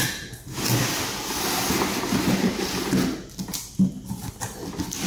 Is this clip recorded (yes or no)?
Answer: yes